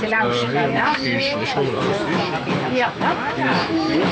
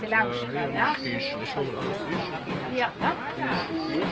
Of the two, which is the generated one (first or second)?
first